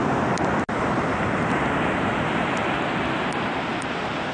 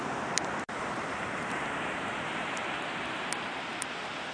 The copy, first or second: second